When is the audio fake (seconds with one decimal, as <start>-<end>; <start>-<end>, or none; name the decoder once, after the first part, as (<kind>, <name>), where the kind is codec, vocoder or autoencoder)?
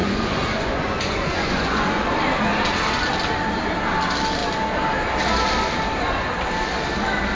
0.0-2.0 (vocoder, Vocos)